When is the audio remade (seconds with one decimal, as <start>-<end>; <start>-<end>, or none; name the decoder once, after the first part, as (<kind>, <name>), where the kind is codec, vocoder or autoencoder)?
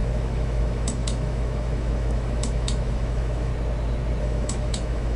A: 0.0-3.5 (autoencoder, DAC-VAE); 4.2-5.2